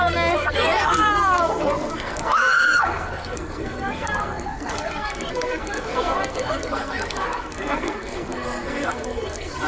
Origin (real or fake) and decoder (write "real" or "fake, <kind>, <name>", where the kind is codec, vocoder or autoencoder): fake, codec, SNAC